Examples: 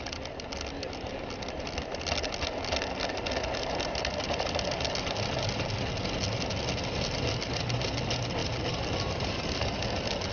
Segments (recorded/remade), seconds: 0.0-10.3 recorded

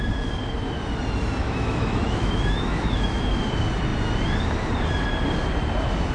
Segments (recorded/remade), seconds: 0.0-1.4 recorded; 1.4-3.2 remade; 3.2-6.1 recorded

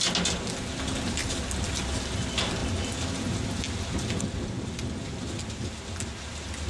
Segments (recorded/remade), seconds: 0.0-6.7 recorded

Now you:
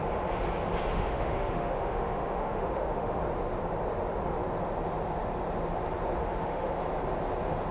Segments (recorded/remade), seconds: 0.0-0.9 recorded; 0.9-3.2 remade; 3.2-6.2 recorded; 6.2-6.8 remade; 6.8-7.7 recorded

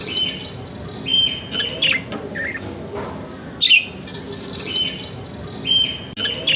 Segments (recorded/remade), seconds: 0.0-6.6 recorded